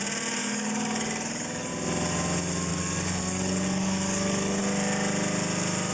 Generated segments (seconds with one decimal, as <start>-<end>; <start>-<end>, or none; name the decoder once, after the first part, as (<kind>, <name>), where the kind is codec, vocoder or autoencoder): 0.4-1.7 (codec, DAC); 2.7-4.6